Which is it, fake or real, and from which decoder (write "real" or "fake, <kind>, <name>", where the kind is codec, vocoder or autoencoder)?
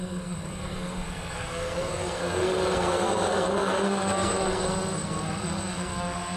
fake, codec, SNAC